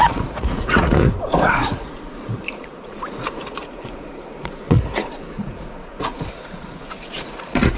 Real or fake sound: fake